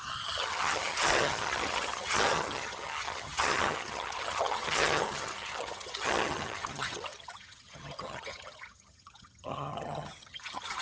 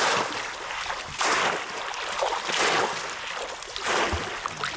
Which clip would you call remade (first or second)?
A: first